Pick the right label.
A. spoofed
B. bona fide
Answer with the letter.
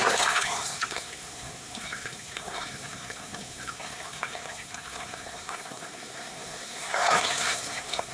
A